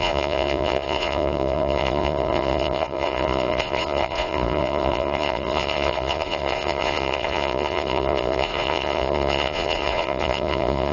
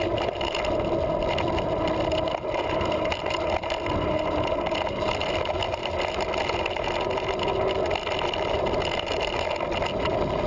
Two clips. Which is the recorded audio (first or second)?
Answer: second